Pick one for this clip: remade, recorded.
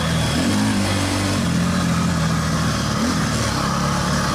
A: recorded